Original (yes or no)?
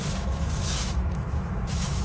no